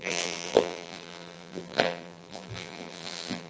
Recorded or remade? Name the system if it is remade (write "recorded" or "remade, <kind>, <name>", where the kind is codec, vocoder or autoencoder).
remade, vocoder, BigVGAN v2